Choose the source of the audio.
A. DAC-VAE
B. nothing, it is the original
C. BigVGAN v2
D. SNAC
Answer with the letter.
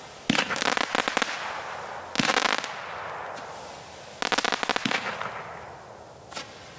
B